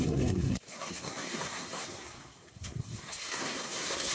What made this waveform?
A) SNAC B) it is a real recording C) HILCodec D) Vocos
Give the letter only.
A